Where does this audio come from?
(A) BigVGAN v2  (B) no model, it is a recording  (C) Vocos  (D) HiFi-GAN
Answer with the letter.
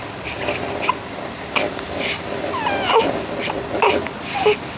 B